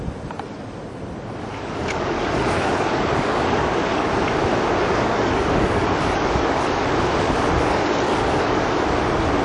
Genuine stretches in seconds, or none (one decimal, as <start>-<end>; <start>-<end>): 0.0-1.5; 4.1-4.9; 8.6-9.4

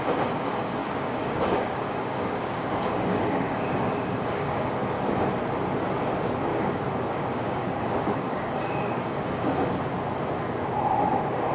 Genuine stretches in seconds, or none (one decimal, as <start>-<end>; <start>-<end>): 0.0-0.8; 5.0-6.5; 9.8-11.5

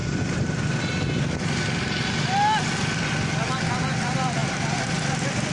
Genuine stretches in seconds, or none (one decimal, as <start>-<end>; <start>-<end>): 0.7-4.4; 5.0-5.5

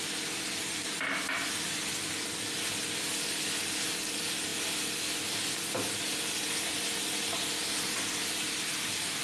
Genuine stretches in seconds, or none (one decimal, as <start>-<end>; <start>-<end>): 0.0-7.6

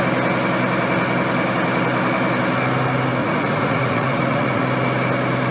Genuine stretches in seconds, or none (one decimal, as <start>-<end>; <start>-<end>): 0.0-3.2; 4.6-5.5

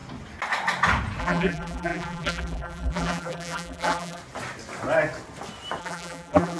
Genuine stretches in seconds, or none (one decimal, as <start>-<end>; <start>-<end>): 0.0-1.2; 4.2-5.8